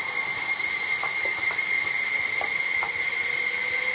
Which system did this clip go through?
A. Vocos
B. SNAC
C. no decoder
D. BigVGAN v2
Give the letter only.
C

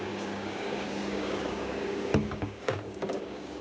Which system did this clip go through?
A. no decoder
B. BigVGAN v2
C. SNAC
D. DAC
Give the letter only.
D